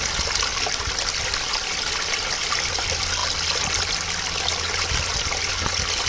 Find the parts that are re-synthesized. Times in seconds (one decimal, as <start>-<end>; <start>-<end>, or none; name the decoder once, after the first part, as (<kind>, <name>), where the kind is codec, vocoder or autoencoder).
none